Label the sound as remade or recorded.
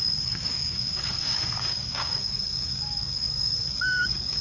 remade